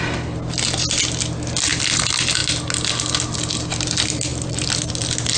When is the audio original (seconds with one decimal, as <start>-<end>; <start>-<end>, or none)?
0.0-5.4